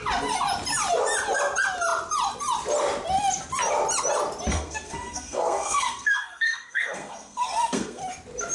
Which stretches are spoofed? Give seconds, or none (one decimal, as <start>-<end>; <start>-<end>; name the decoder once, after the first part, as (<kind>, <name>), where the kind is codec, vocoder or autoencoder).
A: 4.5-8.0 (codec, SNAC)